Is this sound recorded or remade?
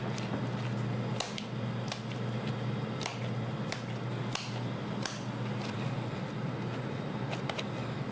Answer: recorded